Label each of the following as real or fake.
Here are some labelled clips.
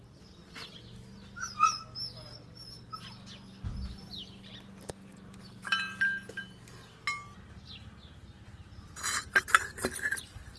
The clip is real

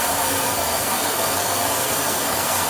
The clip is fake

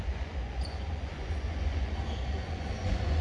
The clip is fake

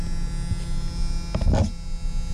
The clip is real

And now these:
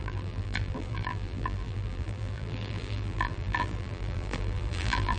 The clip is fake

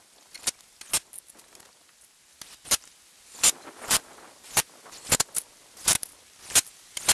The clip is real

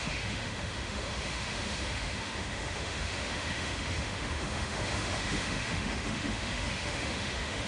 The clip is fake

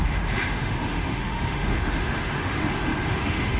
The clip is fake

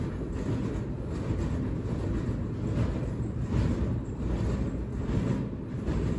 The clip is real